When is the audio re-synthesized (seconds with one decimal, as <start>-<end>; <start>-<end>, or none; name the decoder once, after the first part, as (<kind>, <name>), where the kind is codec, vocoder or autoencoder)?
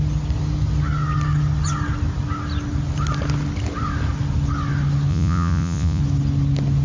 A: 5.1-6.0 (vocoder, Vocos)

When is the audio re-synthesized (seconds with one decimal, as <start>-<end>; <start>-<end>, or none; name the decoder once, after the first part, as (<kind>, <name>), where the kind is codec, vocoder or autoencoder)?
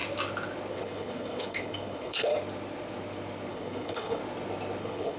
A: 0.7-2.3 (codec, HILCodec); 3.5-4.2; 4.8-5.2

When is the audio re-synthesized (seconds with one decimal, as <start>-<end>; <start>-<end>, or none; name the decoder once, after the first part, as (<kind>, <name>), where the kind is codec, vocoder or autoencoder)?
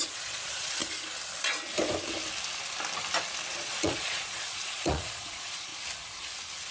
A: 0.0-0.8 (vocoder, Vocos); 3.5-5.7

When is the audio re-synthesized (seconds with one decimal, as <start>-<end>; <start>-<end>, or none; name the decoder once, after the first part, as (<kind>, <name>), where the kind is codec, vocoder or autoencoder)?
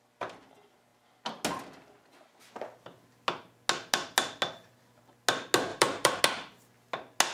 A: 5.7-6.2 (vocoder, BigVGAN v2)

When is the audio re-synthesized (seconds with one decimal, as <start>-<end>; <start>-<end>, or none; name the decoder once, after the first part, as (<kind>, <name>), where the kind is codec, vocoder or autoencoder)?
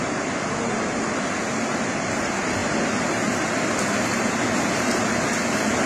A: none